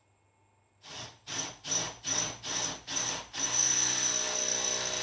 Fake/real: real